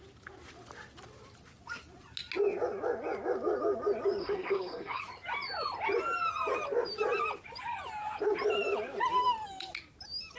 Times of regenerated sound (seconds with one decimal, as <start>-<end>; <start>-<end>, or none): 4.2-5.0